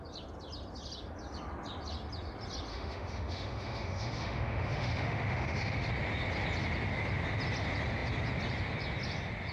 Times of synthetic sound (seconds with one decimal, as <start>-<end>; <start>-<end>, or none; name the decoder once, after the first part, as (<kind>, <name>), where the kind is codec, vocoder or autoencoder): 2.7-5.9 (autoencoder, DAC-VAE)